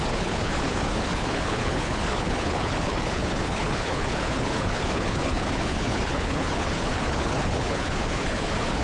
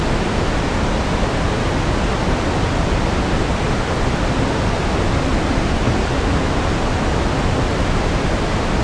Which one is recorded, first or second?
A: second